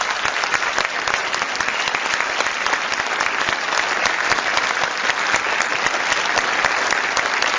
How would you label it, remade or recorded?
recorded